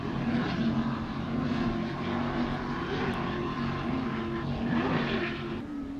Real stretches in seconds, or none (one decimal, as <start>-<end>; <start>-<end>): 0.0-6.0